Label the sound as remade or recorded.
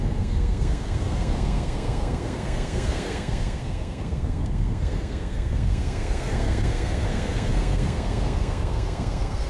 remade